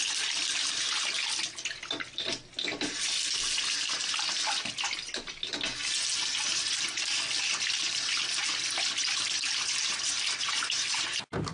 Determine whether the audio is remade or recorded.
recorded